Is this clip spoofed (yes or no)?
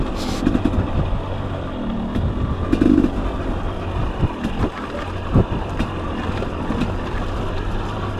no